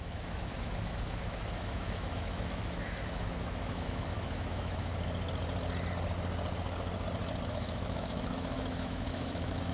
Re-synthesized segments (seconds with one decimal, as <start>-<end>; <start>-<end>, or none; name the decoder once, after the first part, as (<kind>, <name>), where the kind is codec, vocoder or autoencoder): 0.0-4.9 (autoencoder, DAC-VAE); 7.5-9.7